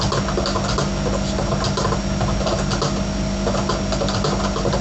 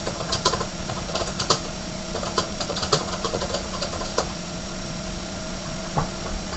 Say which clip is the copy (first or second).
second